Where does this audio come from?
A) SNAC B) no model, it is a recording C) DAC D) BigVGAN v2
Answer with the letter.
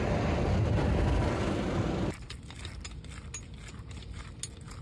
B